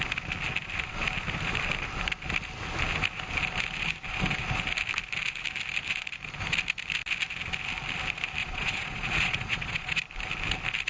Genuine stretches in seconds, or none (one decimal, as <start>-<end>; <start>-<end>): 0.0-8.4; 10.0-10.9

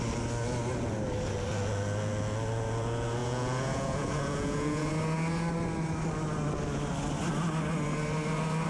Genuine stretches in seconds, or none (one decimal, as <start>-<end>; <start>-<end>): 0.0-3.2; 4.9-8.7

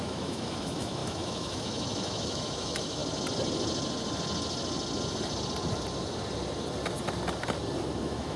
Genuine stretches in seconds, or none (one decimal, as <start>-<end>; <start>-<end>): 3.0-8.0

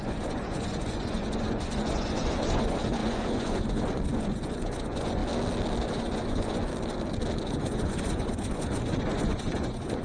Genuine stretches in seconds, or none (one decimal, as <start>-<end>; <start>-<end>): 5.2-5.8; 6.7-7.4

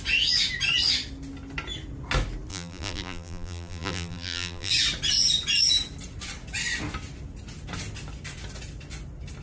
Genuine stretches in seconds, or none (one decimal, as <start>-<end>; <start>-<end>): 0.0-2.5; 4.7-9.4

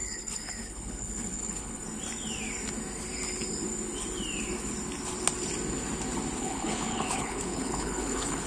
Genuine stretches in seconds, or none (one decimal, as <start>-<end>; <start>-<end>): 1.8-6.4